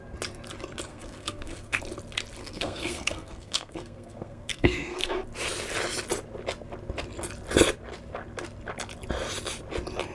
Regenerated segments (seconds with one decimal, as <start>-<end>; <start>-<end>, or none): 0.9-1.8; 2.4-5.2